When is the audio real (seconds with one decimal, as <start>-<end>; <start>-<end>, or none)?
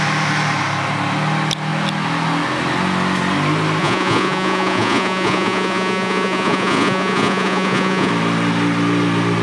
0.0-3.8; 8.1-9.4